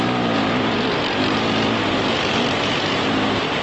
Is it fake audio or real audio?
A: real